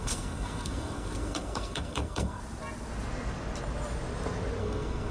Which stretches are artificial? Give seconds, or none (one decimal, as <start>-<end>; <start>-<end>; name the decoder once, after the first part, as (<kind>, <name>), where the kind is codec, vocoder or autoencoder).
0.0-2.4 (codec, SNAC); 4.6-5.1